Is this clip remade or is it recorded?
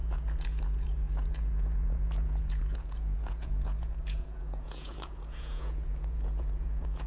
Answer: remade